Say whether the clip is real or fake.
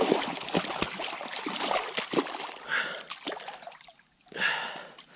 real